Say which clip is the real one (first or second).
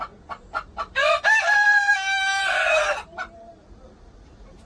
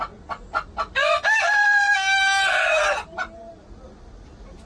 second